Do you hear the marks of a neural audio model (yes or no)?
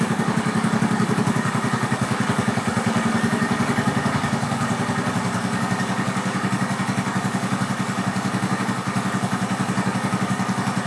yes